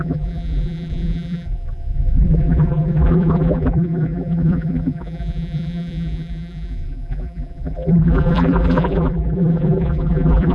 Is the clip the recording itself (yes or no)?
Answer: no